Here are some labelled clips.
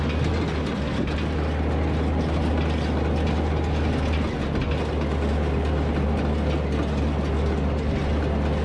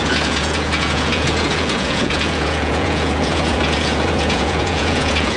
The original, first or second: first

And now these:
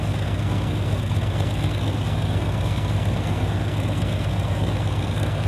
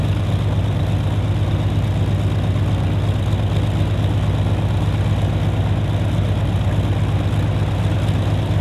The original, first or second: second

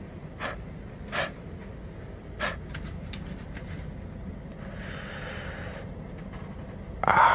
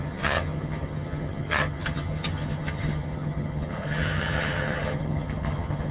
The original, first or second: first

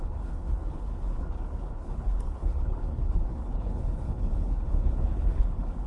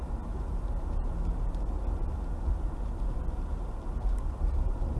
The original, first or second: second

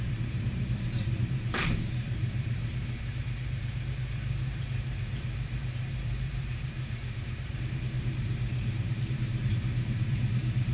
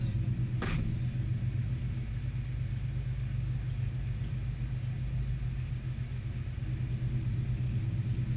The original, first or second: second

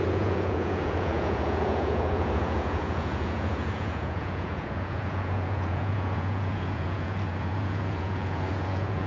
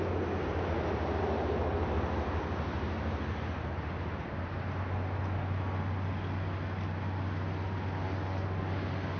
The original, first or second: second